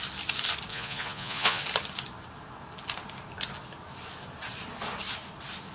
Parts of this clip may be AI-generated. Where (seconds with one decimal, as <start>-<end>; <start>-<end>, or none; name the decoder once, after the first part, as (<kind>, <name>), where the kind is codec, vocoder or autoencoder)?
0.7-1.6 (vocoder, Vocos)